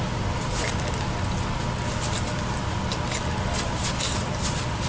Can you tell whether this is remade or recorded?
recorded